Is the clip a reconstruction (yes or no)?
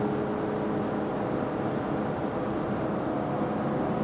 no